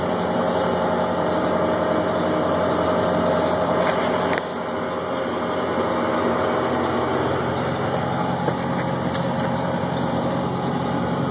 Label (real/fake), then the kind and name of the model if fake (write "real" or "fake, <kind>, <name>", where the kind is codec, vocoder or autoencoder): real